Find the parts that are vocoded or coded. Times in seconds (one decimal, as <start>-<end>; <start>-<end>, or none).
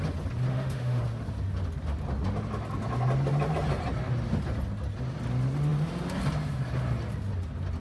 0.5-1.0